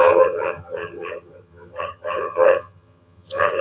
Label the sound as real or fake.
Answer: fake